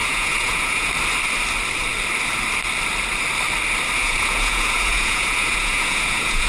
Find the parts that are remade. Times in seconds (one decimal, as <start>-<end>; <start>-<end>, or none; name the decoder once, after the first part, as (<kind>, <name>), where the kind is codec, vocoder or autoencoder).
0.0-0.9 (vocoder, Vocos); 4.0-6.5